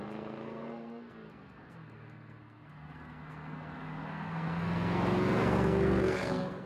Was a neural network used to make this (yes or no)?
yes